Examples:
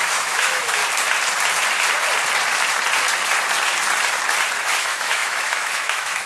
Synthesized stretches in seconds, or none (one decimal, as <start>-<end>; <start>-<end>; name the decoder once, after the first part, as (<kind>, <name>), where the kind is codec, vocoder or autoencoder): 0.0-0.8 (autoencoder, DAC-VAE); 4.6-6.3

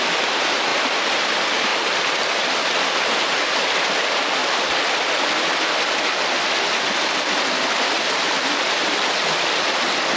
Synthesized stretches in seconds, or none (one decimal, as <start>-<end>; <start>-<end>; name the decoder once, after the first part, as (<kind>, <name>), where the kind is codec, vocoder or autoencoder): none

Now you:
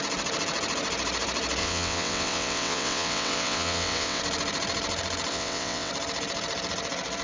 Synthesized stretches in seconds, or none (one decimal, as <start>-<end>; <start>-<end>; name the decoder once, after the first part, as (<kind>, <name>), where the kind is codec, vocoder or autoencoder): 1.6-4.2 (vocoder, WaveNeXt); 5.3-5.9